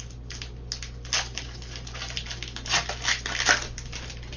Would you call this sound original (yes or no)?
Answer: yes